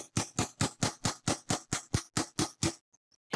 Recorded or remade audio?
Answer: recorded